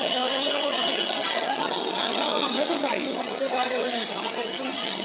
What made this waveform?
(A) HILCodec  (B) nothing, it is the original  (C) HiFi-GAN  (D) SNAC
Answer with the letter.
C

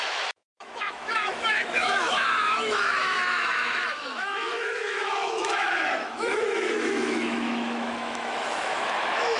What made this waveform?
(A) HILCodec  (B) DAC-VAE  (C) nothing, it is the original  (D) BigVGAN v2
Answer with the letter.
B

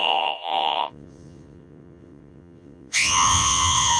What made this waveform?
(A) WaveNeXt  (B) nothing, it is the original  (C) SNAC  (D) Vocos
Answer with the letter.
A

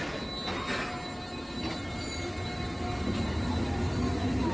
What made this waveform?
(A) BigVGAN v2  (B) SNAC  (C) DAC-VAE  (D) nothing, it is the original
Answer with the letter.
D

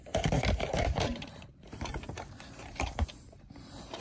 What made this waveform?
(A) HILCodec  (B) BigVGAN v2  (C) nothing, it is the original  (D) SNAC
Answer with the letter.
B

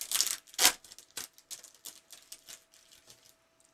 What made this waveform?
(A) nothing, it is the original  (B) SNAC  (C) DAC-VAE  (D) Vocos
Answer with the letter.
A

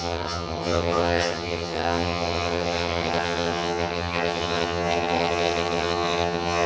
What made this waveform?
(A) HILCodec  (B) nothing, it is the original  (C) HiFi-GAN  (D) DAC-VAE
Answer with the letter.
C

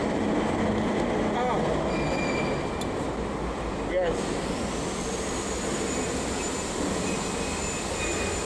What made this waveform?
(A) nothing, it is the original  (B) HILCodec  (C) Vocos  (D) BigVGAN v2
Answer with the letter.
A